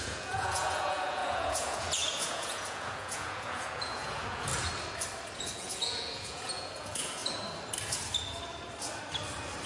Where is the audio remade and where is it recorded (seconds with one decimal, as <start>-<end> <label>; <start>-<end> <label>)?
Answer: 0.0-4.5 remade; 4.5-5.4 recorded; 5.4-7.2 remade; 7.2-9.7 recorded